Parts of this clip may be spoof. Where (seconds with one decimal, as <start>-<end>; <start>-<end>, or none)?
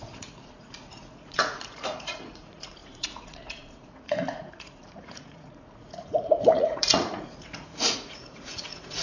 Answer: 0.0-9.0